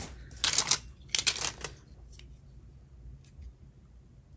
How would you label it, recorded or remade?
recorded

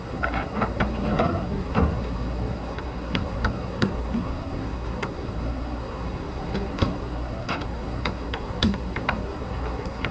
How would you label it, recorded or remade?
remade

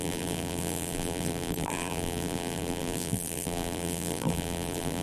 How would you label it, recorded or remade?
remade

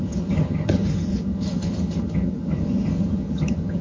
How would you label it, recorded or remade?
remade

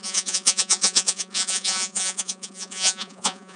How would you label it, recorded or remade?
remade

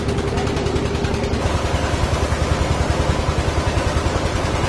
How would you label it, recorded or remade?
recorded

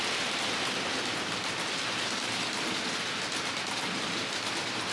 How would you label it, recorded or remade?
recorded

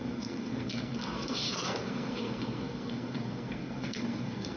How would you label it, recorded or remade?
remade